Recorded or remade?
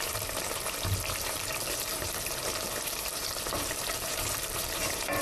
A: remade